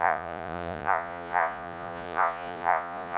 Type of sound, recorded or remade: remade